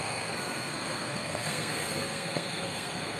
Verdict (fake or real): fake